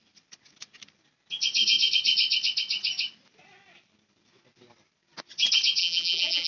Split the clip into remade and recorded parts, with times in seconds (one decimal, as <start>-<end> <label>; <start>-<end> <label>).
0.0-5.8 recorded; 5.8-6.5 remade